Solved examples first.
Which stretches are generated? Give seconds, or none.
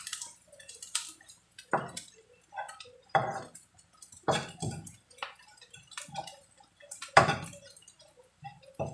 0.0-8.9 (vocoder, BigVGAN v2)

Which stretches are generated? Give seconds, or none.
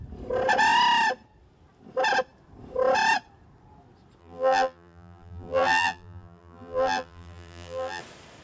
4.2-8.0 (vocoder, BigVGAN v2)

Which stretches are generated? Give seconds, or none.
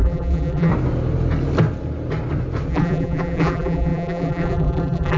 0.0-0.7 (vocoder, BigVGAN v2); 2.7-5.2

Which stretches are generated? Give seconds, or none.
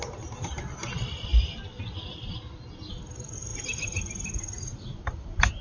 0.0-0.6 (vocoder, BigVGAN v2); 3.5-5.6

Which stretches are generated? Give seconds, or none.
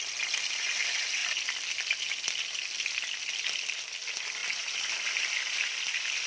4.4-5.7 (vocoder, BigVGAN v2)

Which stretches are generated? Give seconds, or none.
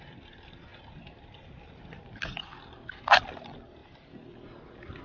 none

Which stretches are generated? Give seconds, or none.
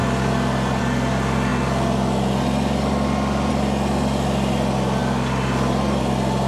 none